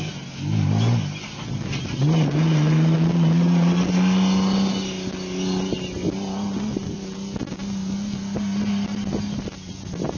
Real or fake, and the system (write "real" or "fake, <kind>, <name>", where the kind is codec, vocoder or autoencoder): real